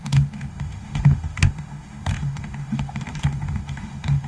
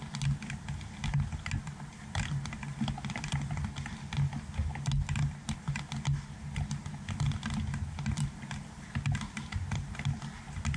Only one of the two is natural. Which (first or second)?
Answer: second